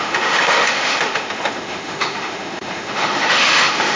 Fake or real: fake